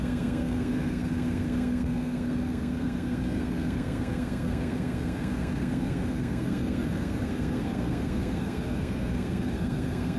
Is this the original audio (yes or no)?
no